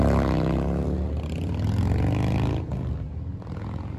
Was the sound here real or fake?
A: real